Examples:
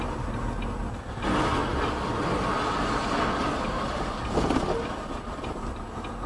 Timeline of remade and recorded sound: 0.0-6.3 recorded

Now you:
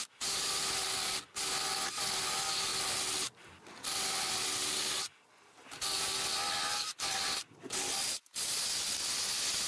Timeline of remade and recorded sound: 0.0-9.7 recorded

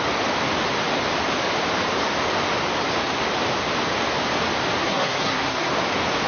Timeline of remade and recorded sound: 0.0-4.8 recorded; 4.8-5.7 remade; 5.7-6.3 recorded

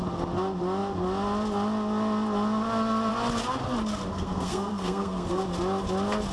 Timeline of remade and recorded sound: 0.0-4.1 recorded; 4.1-5.4 remade; 5.4-6.3 recorded